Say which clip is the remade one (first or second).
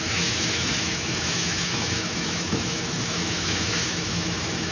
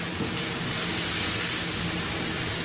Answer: first